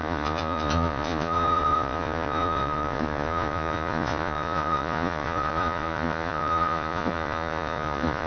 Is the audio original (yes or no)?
no